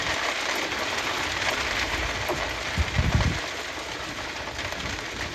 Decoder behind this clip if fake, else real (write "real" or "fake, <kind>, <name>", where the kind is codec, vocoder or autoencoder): real